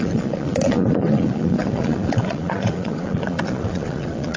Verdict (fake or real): fake